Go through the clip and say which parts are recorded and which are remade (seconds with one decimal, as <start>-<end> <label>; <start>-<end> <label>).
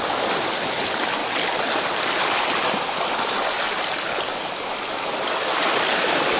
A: 0.0-6.4 recorded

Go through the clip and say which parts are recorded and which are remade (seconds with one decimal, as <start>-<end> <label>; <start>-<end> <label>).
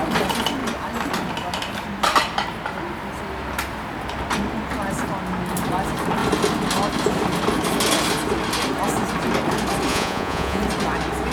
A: 0.0-9.9 recorded; 9.9-10.6 remade; 10.6-11.3 recorded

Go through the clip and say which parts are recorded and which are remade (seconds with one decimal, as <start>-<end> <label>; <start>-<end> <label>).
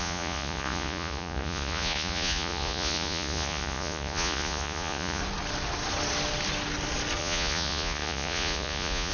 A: 0.0-5.2 remade; 5.2-7.2 recorded; 7.2-9.1 remade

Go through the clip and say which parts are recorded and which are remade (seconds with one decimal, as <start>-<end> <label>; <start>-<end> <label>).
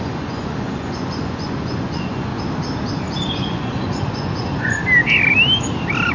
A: 0.0-2.3 remade; 2.3-3.3 recorded; 3.3-4.8 remade; 4.8-6.1 recorded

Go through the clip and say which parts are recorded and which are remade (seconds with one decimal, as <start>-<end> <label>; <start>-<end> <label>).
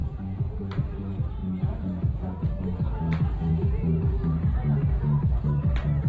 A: 0.0-0.6 remade; 0.6-1.4 recorded; 1.4-2.5 remade; 2.5-3.5 recorded; 3.5-4.7 remade; 4.7-6.1 recorded